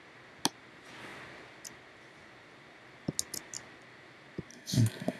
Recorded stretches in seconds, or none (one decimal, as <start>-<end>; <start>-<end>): 0.0-4.5